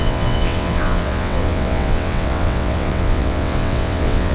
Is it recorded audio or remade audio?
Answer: remade